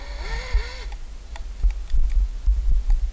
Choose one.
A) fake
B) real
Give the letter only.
B